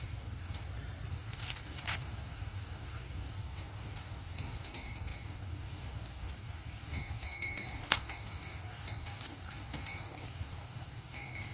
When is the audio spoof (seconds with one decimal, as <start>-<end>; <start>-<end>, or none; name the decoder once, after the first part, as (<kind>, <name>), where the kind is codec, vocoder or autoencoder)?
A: 0.0-0.6 (codec, DAC); 1.1-11.5